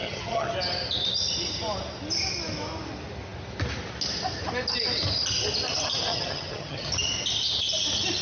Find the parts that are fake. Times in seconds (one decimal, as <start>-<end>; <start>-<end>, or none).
0.0-0.5; 6.1-6.9